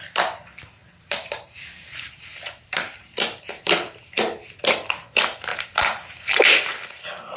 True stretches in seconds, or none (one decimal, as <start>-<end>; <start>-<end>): 0.0-0.8; 4.2-5.5